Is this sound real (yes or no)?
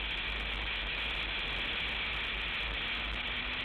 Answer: yes